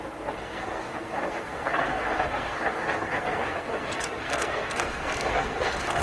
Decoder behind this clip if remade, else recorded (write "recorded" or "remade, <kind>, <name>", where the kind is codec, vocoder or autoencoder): remade, codec, SNAC